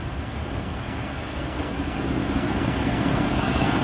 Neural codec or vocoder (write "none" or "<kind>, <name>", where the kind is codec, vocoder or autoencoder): codec, SNAC